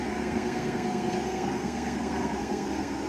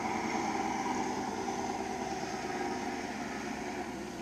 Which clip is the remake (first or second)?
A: first